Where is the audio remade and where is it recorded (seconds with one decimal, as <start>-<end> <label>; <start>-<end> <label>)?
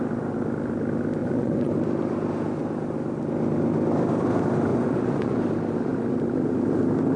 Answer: 0.0-1.2 recorded; 1.2-1.7 remade; 1.7-4.7 recorded; 4.7-5.4 remade; 5.4-7.2 recorded